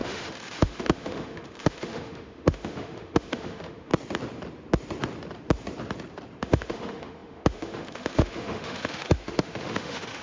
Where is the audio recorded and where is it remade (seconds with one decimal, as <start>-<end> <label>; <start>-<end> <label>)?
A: 0.0-3.9 remade; 3.9-6.4 recorded; 6.4-10.2 remade

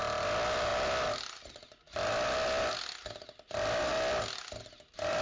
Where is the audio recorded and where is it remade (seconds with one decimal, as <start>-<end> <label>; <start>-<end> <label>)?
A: 0.0-5.2 recorded

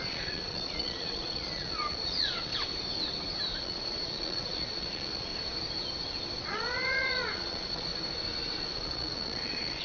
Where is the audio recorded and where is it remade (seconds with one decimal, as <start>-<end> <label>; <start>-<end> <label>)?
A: 0.0-2.5 remade; 2.5-3.6 recorded; 3.6-5.3 remade; 5.3-6.4 recorded; 6.4-7.9 remade; 7.9-8.7 recorded; 8.7-9.8 remade

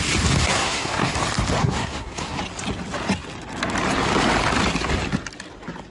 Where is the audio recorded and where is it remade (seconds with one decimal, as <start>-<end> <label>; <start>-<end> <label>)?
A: 0.0-0.4 recorded; 0.4-1.1 remade; 1.1-1.6 recorded; 1.6-2.4 remade; 2.4-5.9 recorded

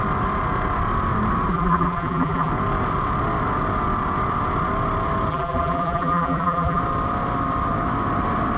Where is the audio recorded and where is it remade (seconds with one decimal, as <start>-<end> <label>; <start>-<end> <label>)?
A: 0.0-1.5 recorded; 1.5-2.5 remade; 2.5-5.3 recorded; 5.3-6.8 remade; 6.8-8.6 recorded